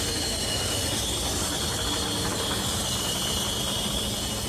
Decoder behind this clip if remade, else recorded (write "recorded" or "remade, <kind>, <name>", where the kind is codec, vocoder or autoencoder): recorded